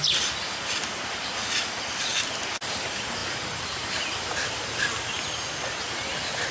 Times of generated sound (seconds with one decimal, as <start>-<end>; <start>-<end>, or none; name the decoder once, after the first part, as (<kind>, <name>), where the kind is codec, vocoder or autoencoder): none